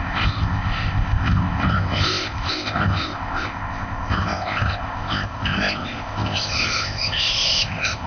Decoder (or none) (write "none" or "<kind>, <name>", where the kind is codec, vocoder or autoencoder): codec, ZipCodec